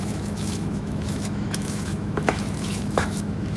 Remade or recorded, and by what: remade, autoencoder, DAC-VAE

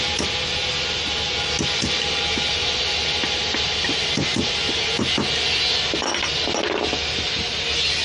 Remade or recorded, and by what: recorded